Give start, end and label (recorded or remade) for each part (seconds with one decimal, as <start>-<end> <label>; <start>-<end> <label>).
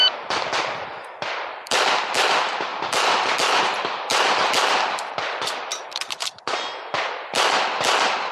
0.0-0.9 recorded; 0.9-1.7 remade; 1.7-8.3 recorded